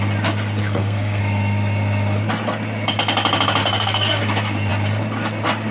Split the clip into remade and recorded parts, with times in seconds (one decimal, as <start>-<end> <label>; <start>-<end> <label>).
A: 0.0-0.6 recorded; 0.6-1.2 remade; 1.2-3.6 recorded; 3.6-4.2 remade; 4.2-5.7 recorded